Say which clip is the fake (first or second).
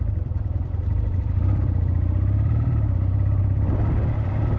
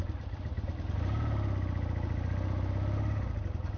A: first